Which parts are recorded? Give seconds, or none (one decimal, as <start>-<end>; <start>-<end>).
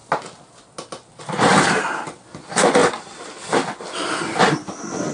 0.0-5.1